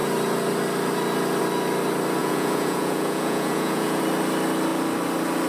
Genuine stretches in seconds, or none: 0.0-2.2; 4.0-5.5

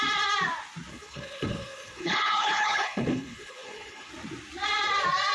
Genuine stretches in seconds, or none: 0.0-0.9; 4.1-5.3